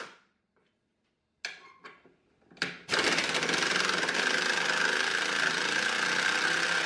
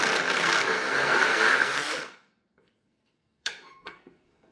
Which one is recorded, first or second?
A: first